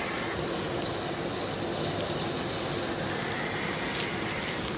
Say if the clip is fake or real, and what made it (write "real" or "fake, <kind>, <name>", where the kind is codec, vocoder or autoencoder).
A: real